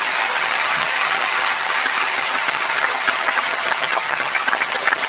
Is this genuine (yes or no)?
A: no